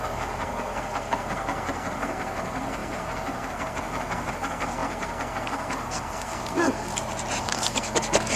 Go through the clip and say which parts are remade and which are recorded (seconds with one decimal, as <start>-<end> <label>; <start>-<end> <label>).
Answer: 0.0-6.9 remade; 6.9-7.4 recorded; 7.4-8.4 remade